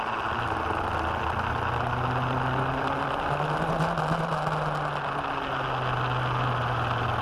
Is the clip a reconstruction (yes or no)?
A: no